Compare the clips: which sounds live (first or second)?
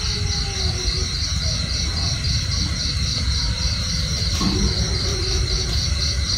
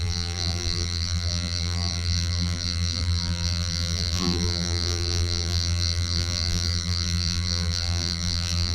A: first